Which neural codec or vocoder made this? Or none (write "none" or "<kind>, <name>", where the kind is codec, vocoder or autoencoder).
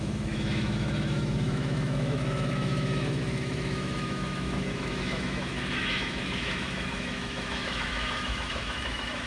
autoencoder, DAC-VAE